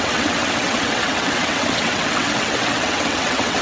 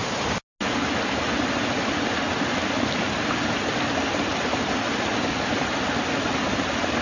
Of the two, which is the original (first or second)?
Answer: second